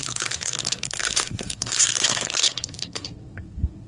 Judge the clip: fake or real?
fake